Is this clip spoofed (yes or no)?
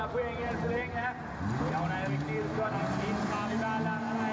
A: no